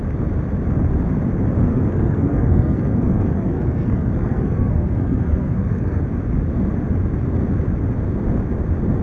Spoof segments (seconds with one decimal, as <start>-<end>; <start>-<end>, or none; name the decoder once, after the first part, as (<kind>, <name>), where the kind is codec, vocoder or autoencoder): 1.7-6.0 (codec, SNAC)